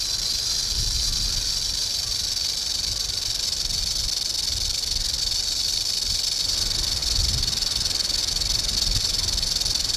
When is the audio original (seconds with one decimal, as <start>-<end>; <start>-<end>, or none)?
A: 0.0-10.0